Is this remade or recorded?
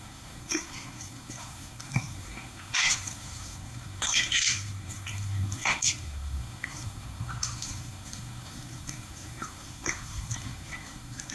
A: remade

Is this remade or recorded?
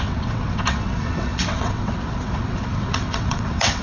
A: remade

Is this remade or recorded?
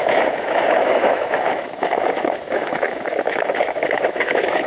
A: remade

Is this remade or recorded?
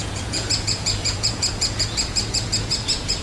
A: remade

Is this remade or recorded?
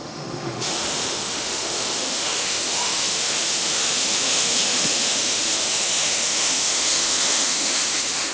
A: remade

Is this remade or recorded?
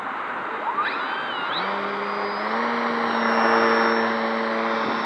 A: recorded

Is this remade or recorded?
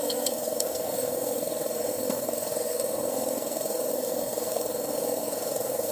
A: remade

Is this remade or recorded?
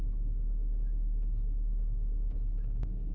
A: recorded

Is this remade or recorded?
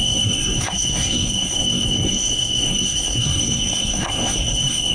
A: remade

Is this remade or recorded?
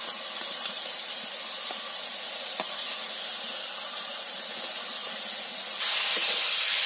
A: recorded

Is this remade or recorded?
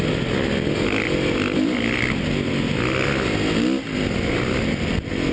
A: recorded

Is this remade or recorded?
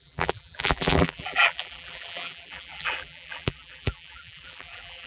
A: remade